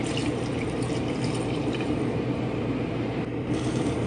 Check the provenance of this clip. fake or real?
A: fake